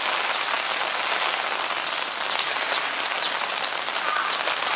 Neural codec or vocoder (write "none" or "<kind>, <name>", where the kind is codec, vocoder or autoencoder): none